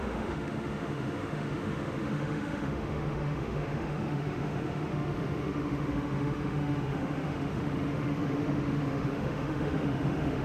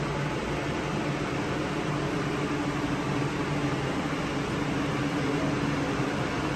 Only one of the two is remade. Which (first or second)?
first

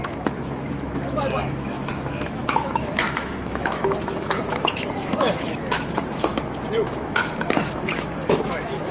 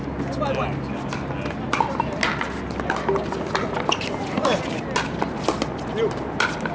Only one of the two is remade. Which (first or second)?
first